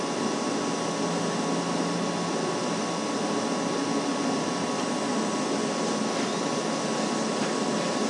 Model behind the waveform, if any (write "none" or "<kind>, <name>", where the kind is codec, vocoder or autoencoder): none